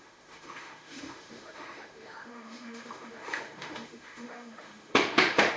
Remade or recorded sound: remade